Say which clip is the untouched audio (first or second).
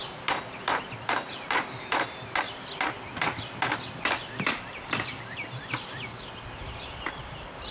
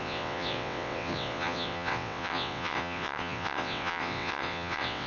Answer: first